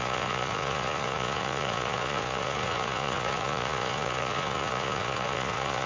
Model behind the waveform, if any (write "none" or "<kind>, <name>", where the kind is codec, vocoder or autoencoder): vocoder, Vocos